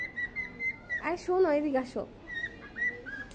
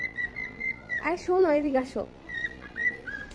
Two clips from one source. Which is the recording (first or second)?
first